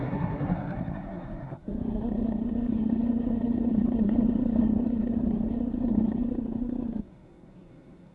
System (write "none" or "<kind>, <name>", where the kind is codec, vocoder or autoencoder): codec, SNAC